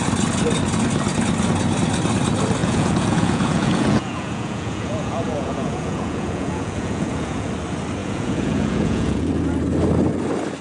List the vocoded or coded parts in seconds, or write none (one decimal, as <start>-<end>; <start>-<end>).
2.6-7.5; 8.0-9.3